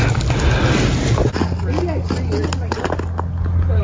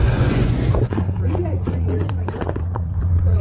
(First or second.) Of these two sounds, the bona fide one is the first